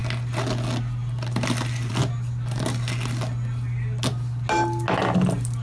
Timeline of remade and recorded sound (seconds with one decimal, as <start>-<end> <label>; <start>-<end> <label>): 0.0-5.6 recorded